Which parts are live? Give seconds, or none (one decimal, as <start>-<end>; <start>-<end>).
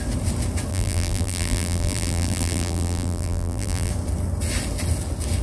0.0-0.7; 3.9-5.4